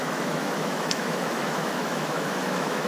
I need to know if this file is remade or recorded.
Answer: remade